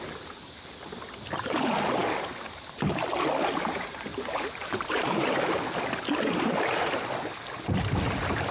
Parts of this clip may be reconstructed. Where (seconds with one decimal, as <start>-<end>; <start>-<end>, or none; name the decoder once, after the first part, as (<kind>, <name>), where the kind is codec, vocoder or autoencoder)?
4.1-5.4 (vocoder, BigVGAN v2)